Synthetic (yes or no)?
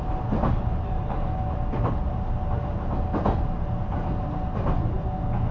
no